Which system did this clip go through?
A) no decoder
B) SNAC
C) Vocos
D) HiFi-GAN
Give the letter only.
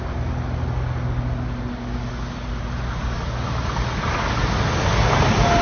A